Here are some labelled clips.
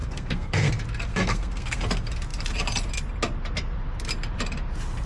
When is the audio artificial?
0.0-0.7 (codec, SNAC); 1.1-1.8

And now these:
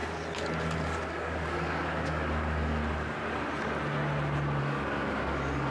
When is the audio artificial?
1.1-2.8 (codec, DAC); 4.6-5.7

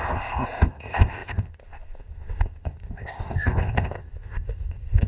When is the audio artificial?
0.0-5.1 (codec, ZipCodec)

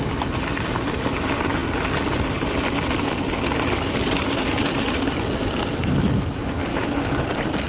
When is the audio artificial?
6.7-7.3 (autoencoder, DAC-VAE)